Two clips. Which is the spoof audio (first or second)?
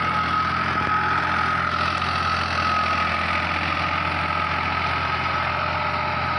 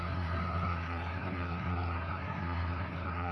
second